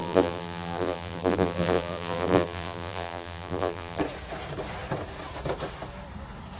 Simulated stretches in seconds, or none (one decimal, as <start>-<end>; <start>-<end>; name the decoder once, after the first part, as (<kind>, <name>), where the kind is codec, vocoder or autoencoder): 0.0-4.0 (vocoder, BigVGAN v2)